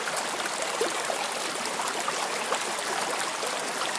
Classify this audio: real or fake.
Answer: real